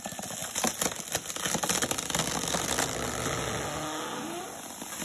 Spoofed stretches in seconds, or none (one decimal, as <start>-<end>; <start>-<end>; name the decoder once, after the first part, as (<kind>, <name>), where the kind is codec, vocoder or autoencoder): none

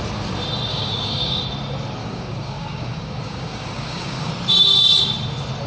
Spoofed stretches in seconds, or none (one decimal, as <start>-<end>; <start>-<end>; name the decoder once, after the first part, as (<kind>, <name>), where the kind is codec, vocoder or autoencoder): 0.7-1.4 (codec, DAC); 2.0-4.3

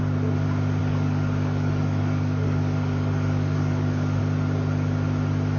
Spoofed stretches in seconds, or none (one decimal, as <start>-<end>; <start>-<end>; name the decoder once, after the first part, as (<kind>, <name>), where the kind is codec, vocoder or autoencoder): 0.8-4.2 (codec, DAC)

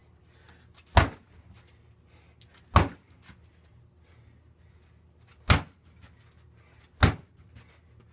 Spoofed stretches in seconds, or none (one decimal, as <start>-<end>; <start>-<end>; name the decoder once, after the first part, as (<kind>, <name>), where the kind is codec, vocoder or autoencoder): none